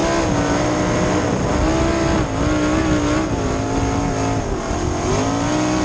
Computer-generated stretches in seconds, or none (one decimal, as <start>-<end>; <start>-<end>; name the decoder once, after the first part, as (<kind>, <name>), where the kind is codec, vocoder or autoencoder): none